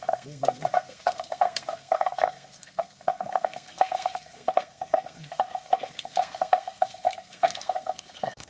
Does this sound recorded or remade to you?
remade